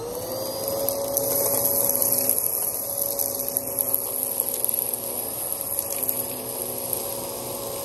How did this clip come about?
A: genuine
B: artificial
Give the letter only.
A